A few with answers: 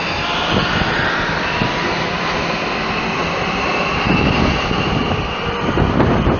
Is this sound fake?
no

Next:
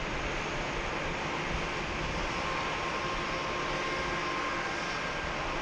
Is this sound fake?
no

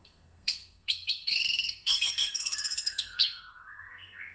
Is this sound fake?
yes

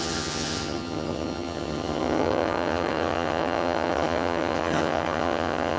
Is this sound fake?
yes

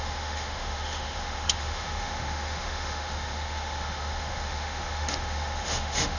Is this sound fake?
yes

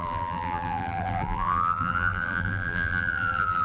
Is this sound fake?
yes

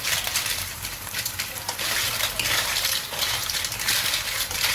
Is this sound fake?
yes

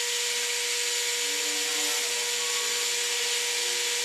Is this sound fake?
no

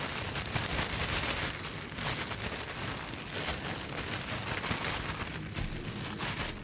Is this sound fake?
no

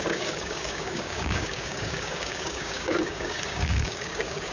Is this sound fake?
yes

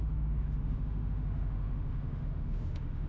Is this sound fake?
yes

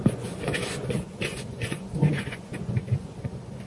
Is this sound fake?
yes